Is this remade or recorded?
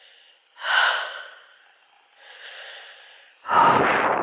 recorded